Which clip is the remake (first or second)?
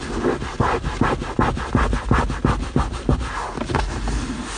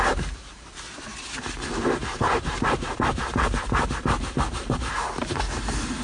second